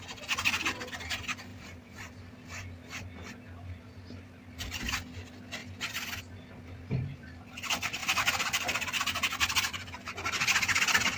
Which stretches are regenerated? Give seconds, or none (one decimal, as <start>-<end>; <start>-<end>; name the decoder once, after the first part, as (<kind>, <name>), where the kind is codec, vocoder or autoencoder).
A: 1.5-2.3 (vocoder, BigVGAN v2); 8.0-9.0